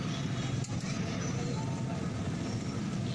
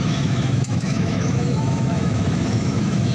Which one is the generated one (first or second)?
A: second